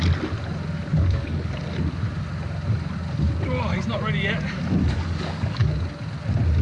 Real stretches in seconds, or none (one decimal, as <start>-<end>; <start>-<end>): 0.0-0.9; 1.5-4.8; 5.7-6.6